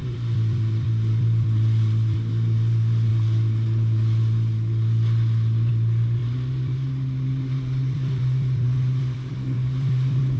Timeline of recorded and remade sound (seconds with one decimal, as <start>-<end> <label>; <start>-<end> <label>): 0.0-2.3 remade; 2.3-6.2 recorded; 6.2-10.4 remade